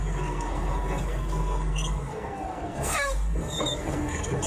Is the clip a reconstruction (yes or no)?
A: yes